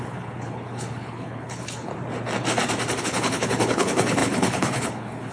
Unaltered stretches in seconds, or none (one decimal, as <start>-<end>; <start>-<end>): 1.9-3.0